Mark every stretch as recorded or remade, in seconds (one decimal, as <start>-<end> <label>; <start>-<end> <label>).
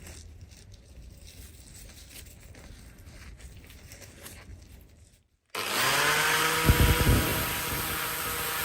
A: 0.0-8.6 recorded